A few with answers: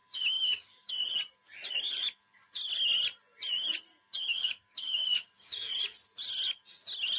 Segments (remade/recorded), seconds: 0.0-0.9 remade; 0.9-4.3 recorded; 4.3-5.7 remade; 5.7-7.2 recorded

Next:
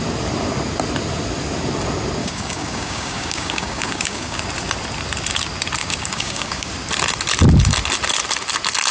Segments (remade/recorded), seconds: 0.0-2.2 recorded; 2.2-4.4 remade; 4.4-5.8 recorded; 5.8-6.7 remade; 6.7-8.9 recorded

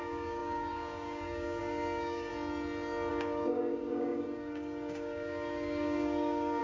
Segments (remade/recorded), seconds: 0.0-2.3 remade; 2.3-3.1 recorded; 3.1-6.6 remade

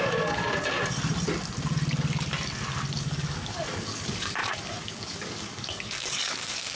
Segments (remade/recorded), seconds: 0.0-0.4 remade; 0.4-3.0 recorded; 3.0-6.8 remade

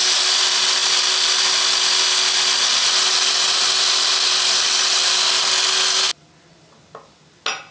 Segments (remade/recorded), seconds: 0.0-7.7 recorded

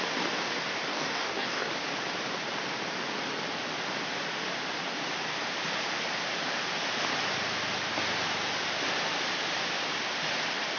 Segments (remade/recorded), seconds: 0.0-0.9 recorded; 0.9-1.7 remade; 1.7-10.8 recorded

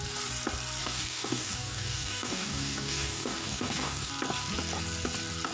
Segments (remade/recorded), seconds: 0.0-0.8 recorded; 0.8-4.1 remade; 4.1-5.5 recorded

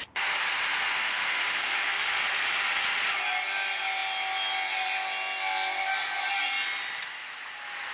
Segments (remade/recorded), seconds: 0.0-1.0 recorded; 1.0-2.0 remade; 2.0-7.9 recorded